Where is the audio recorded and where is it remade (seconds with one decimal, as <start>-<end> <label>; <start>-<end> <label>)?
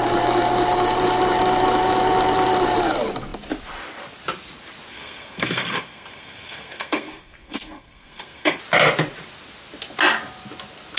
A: 0.0-4.9 recorded; 4.9-8.6 remade; 8.6-11.0 recorded